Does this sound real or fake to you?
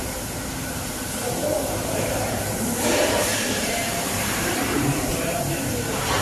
fake